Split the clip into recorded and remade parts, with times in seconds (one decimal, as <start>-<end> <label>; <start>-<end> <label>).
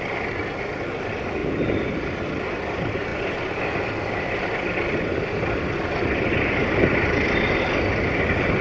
0.0-1.4 recorded; 1.4-1.9 remade; 1.9-8.6 recorded